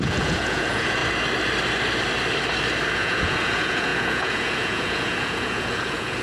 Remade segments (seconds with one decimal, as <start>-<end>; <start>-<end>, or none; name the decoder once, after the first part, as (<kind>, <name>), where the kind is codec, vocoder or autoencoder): 0.0-1.0 (vocoder, Vocos); 2.9-6.2